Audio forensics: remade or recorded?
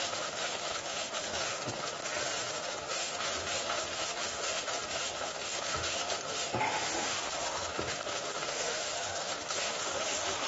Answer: remade